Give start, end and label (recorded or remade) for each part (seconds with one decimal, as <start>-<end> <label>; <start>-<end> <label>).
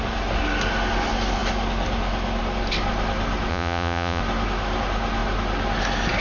0.0-3.5 recorded; 3.5-4.2 remade; 4.2-6.2 recorded